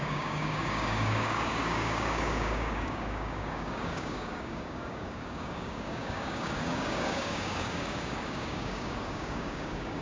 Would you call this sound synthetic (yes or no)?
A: yes